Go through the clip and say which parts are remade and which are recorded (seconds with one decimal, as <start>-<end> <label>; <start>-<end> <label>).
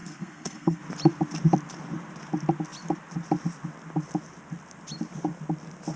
0.0-0.8 remade; 0.8-6.0 recorded